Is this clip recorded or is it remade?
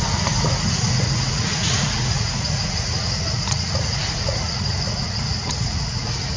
remade